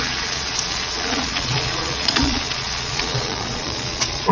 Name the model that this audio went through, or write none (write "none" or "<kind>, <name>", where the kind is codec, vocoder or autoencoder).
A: vocoder, Vocos